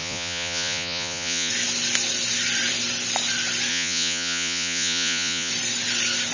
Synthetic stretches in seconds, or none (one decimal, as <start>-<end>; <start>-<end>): 0.0-1.5; 3.7-5.5